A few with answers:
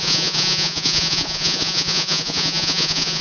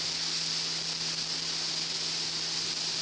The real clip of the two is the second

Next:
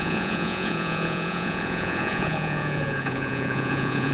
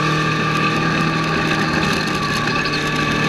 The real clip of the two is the second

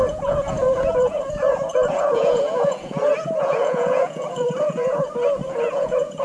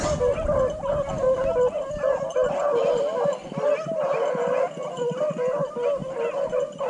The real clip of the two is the second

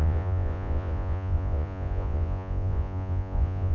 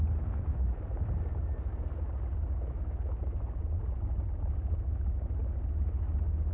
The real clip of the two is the second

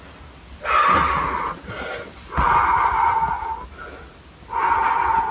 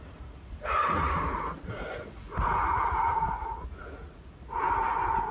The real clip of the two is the first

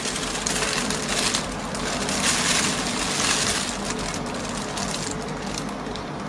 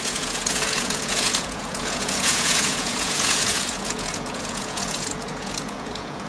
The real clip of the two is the first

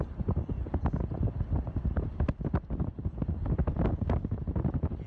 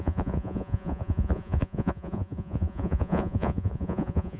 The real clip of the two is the first